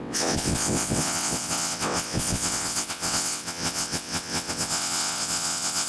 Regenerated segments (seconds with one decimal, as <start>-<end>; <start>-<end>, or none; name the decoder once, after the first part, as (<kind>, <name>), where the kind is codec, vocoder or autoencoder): 0.0-5.9 (vocoder, WaveNeXt)